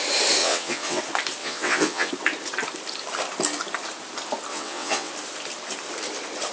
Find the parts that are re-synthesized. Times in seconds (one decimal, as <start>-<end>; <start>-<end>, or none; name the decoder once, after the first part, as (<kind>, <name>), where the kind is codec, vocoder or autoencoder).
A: 0.4-1.0 (vocoder, WaveNeXt); 1.4-2.1; 4.5-5.1